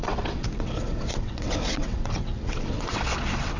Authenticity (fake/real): fake